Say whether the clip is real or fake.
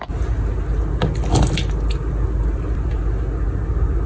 real